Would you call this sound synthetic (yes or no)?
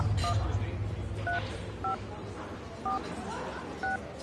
no